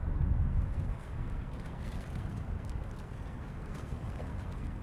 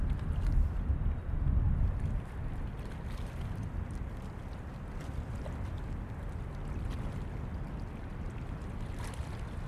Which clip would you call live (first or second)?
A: second